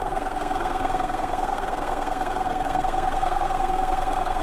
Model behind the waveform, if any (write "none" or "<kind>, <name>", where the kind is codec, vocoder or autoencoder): codec, SNAC